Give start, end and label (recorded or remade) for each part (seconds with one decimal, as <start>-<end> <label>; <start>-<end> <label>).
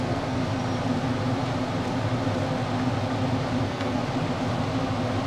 0.0-0.4 remade; 0.4-3.6 recorded; 3.6-4.0 remade; 4.0-5.3 recorded